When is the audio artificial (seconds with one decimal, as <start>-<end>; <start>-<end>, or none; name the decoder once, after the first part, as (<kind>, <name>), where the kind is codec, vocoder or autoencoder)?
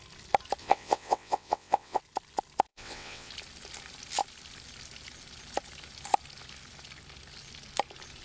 0.6-2.0 (vocoder, WaveNeXt); 2.7-3.3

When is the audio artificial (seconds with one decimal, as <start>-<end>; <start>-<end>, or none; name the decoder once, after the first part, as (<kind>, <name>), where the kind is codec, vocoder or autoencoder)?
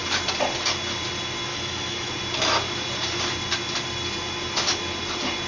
1.5-2.1 (autoencoder, DAC-VAE)